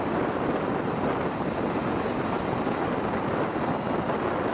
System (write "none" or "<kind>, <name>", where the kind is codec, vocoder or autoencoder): none